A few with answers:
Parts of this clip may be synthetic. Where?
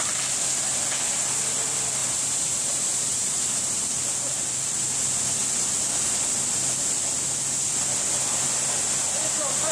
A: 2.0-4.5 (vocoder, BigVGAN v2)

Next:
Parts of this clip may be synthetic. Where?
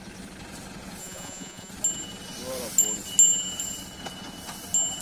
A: 1.0-1.7 (vocoder, Vocos)